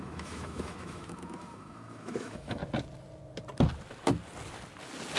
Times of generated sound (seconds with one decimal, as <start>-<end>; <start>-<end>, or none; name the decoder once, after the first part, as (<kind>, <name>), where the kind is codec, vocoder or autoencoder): 0.0-2.6 (autoencoder, DAC-VAE)